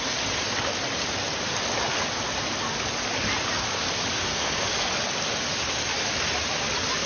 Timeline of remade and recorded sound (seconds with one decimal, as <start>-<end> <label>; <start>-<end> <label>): 0.0-4.3 recorded; 4.3-4.9 remade; 4.9-7.1 recorded